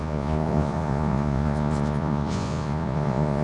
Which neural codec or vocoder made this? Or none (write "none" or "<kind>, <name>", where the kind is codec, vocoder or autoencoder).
vocoder, Vocos